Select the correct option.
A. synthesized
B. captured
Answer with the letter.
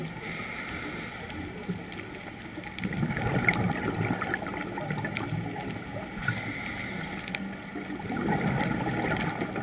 B